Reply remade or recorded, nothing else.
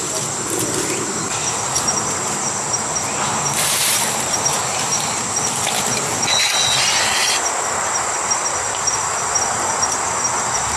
recorded